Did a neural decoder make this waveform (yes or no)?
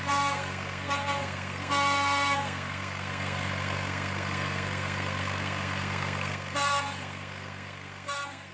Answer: yes